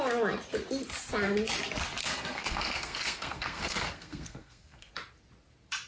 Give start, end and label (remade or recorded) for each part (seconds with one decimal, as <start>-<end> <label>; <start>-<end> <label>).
0.0-2.0 recorded; 2.0-4.9 remade; 4.9-5.9 recorded